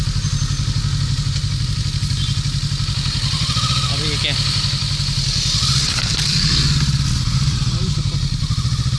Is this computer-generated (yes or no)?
no